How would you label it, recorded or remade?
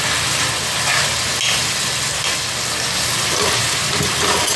recorded